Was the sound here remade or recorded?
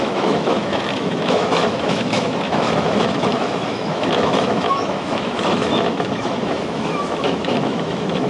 remade